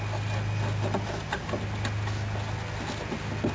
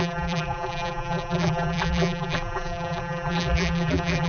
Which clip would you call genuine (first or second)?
first